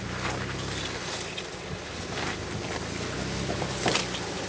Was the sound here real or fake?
real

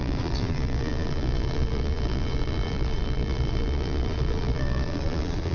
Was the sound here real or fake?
fake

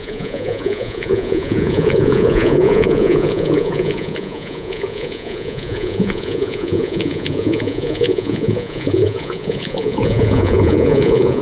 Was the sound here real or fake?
fake